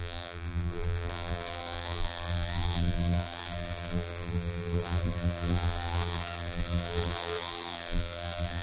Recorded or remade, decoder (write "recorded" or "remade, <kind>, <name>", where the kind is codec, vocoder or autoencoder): remade, vocoder, BigVGAN v2